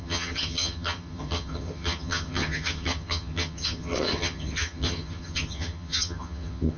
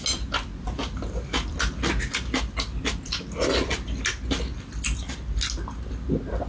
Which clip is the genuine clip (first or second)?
second